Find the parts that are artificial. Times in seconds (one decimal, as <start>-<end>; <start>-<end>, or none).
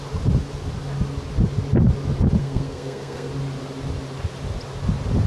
2.4-3.3